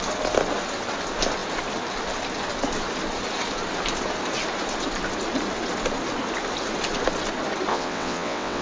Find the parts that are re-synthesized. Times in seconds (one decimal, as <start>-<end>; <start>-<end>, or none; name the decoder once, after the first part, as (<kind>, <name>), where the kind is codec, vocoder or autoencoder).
7.7-8.6 (vocoder, WaveNeXt)